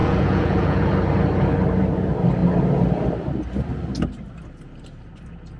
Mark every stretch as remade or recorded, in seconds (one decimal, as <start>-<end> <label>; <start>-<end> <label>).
0.0-0.9 remade; 0.9-5.6 recorded